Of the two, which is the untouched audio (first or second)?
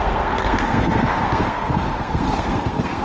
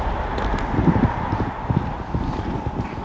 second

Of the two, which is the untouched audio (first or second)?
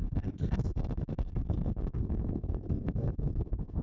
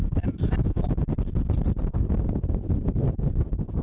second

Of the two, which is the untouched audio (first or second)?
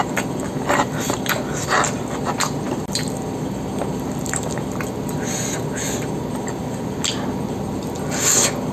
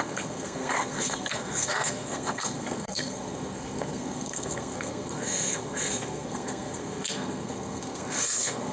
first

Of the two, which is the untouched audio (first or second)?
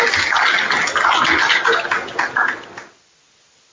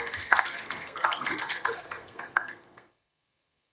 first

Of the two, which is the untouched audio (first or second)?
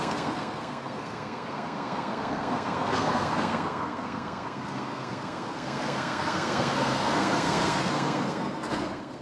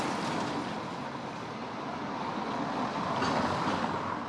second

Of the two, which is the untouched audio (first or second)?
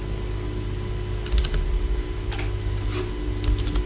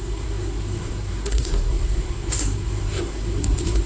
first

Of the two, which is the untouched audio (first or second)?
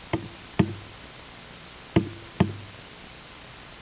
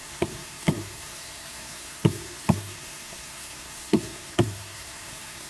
first